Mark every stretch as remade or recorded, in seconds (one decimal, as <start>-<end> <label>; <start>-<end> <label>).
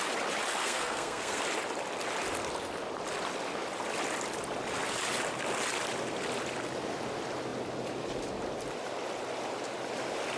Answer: 0.0-0.6 recorded; 0.6-1.4 remade; 1.4-10.4 recorded